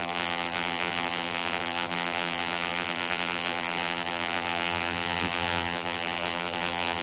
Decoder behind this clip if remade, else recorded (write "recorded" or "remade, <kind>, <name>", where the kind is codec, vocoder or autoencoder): remade, vocoder, BigVGAN v2